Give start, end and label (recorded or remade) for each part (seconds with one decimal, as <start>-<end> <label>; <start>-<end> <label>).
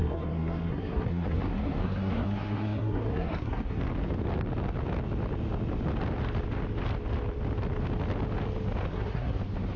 0.0-3.8 remade; 3.8-8.9 recorded; 8.9-9.4 remade; 9.4-9.8 recorded